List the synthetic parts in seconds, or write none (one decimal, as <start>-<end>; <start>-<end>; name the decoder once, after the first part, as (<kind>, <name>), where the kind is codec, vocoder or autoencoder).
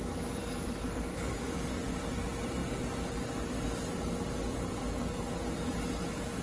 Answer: 1.1-1.9 (codec, DAC)